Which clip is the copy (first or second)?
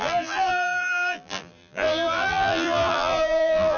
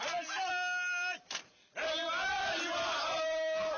first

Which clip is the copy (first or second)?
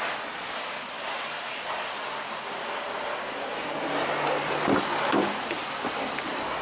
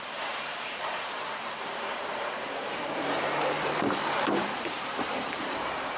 second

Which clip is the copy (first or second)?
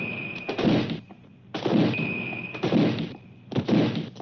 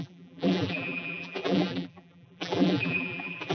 second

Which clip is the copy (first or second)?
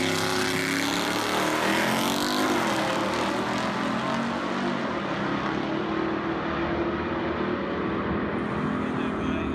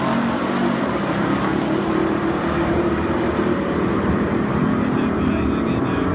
second